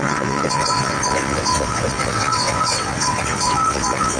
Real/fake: fake